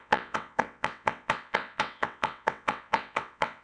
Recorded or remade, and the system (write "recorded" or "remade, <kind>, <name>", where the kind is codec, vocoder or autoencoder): remade, vocoder, WaveNeXt